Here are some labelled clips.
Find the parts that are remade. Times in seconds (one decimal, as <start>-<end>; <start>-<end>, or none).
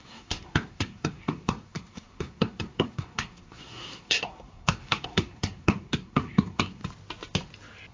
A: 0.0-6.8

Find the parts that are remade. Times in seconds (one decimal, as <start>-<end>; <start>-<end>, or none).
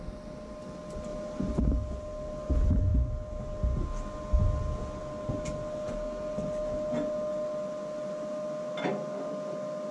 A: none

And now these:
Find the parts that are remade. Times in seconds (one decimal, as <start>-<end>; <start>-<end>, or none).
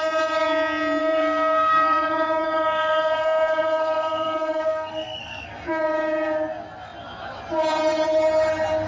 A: 1.0-5.5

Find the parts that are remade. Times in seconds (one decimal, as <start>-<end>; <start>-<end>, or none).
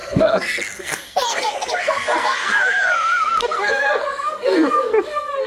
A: 0.0-5.5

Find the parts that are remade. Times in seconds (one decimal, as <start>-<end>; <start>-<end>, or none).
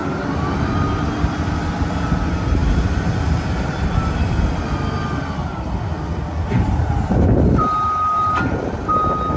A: none